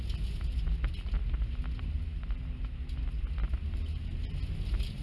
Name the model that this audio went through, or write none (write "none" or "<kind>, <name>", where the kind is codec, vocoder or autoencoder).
none